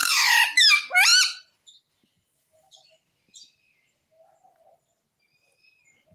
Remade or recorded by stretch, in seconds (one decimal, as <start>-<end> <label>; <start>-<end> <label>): 0.0-0.7 remade; 0.7-6.1 recorded